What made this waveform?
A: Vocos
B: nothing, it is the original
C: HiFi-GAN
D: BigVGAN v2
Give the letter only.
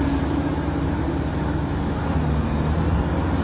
B